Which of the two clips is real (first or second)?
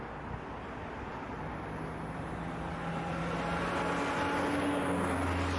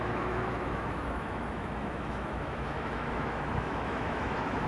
first